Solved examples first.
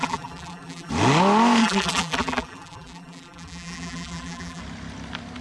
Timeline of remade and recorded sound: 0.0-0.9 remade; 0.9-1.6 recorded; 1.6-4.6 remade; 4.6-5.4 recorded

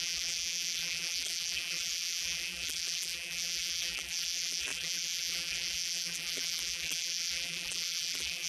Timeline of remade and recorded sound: 0.0-8.5 remade